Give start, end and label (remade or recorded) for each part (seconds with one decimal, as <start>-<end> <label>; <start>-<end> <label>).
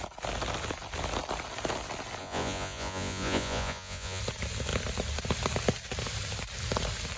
0.0-2.2 recorded; 2.2-4.2 remade; 4.2-7.2 recorded